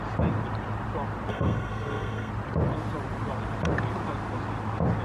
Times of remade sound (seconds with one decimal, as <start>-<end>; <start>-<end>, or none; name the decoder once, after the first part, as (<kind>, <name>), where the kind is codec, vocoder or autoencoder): 1.3-2.3 (codec, SNAC)